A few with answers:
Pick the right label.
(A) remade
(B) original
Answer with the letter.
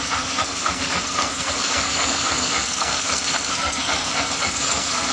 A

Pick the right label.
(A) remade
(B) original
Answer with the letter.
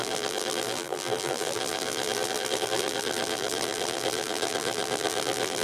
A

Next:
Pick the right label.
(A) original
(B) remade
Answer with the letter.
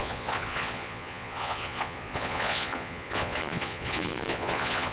B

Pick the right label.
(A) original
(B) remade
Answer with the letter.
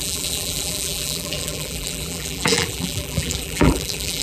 B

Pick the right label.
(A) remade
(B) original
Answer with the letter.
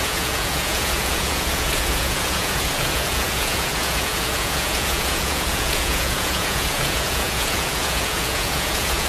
A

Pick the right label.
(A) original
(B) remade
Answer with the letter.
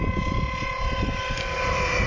A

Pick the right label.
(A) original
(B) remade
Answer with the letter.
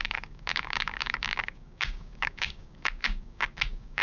B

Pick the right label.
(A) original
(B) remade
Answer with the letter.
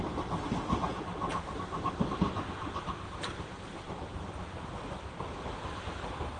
A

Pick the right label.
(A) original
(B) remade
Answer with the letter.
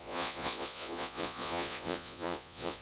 B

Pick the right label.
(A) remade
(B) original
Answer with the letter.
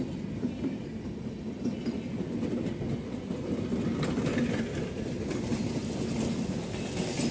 B